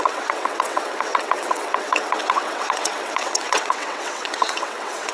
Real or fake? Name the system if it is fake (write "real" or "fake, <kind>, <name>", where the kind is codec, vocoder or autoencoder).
fake, vocoder, WaveNeXt